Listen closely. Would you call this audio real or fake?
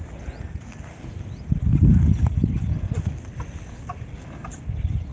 real